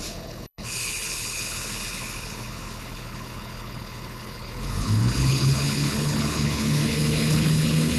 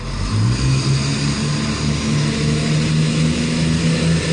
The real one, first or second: second